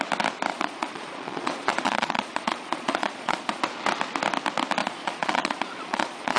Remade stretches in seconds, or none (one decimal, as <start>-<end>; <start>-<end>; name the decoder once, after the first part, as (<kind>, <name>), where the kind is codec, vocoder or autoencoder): 0.5-3.6 (vocoder, Vocos); 4.8-6.4